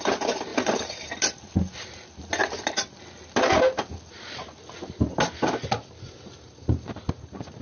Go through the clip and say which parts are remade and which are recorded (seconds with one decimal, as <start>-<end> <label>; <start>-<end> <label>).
0.0-0.5 recorded; 0.5-1.0 remade; 1.0-7.6 recorded